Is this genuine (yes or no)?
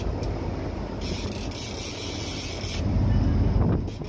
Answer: yes